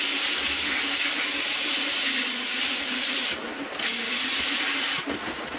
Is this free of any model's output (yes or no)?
yes